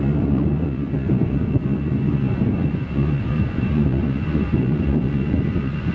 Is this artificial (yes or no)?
yes